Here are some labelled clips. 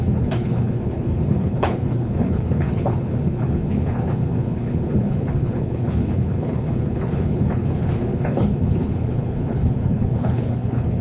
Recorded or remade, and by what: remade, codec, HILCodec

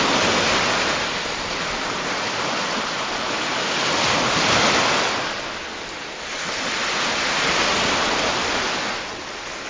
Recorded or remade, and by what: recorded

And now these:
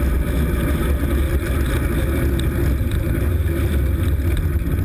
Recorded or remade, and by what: recorded